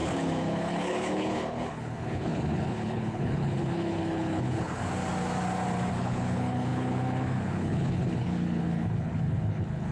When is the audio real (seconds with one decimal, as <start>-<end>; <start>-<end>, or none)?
4.8-5.9